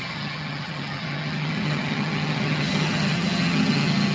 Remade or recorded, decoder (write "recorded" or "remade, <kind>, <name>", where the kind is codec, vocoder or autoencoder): remade, vocoder, HiFi-GAN